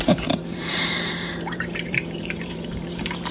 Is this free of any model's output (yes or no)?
no